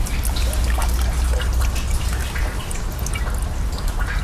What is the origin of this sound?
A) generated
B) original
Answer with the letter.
B